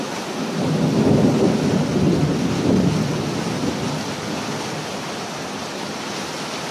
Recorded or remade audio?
recorded